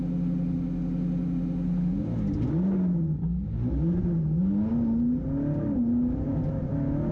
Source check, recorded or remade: recorded